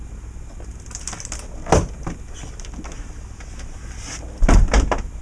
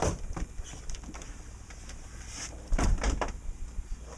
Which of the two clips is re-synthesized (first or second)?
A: second